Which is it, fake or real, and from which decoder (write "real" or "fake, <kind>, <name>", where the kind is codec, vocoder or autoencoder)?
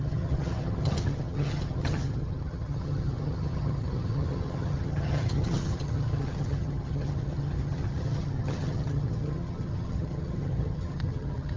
fake, vocoder, HiFi-GAN